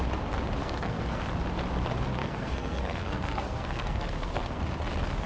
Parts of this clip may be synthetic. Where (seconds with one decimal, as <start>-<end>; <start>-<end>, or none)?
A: 0.6-1.2; 2.2-4.6

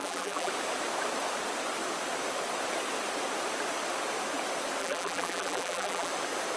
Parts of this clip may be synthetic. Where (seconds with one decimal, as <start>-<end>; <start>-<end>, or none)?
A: 0.0-0.5; 4.8-6.1

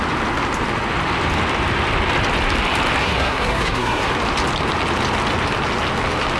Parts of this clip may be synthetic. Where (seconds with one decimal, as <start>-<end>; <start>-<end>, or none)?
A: 3.0-4.1